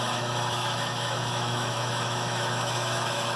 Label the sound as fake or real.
fake